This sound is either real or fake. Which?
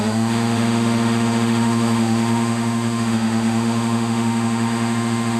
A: fake